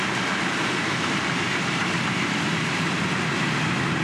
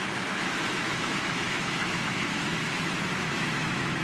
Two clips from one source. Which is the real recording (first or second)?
first